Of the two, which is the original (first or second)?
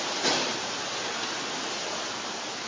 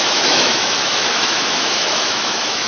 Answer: first